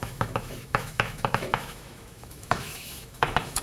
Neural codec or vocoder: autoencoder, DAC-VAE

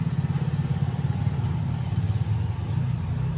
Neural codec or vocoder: none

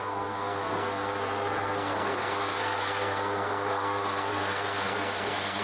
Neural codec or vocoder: codec, SNAC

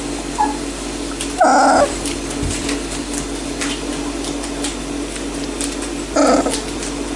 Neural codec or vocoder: none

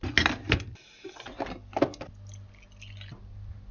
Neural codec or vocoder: none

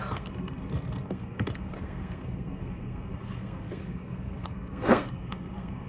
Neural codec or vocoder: codec, SNAC